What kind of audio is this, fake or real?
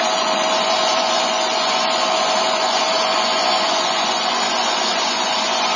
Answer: fake